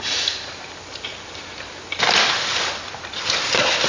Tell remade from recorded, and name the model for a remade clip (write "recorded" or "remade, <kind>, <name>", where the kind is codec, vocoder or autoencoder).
remade, vocoder, BigVGAN v2